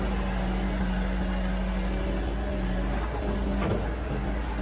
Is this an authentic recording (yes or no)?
yes